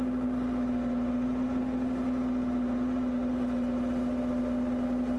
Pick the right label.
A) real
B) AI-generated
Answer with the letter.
A